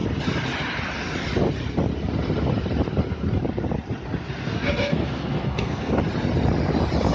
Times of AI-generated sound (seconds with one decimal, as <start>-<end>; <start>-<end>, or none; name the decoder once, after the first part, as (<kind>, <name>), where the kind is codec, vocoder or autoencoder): 4.5-5.9 (codec, SNAC)